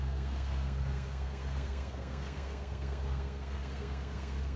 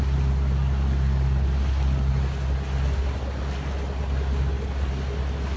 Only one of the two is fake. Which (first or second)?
first